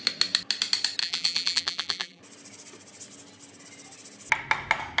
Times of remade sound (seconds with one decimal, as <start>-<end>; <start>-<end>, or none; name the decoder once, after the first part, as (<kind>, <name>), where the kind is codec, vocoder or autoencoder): 1.0-2.2 (vocoder, BigVGAN v2)